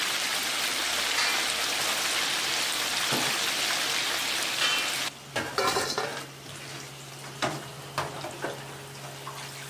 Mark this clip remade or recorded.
recorded